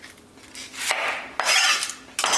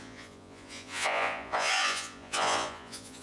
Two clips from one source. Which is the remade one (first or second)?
second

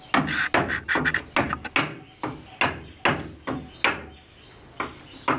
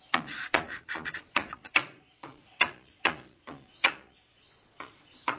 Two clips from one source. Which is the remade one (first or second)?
second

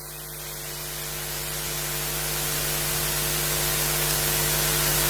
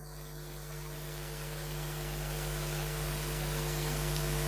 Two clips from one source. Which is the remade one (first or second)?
second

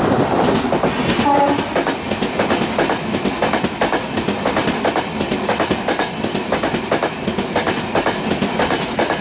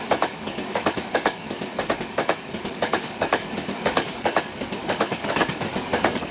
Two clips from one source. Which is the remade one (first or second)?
second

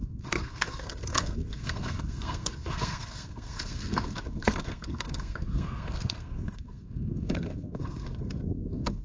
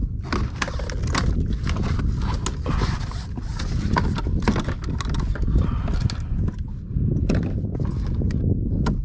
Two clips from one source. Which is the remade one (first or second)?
first